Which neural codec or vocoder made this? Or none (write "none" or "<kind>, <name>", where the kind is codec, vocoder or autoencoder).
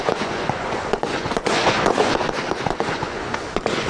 vocoder, Vocos